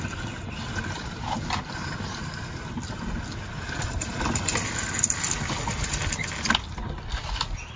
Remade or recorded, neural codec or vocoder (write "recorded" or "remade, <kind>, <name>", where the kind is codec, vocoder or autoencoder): recorded